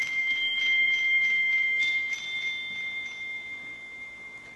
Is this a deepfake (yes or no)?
yes